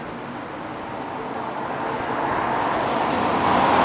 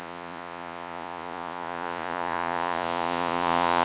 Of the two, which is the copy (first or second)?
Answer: second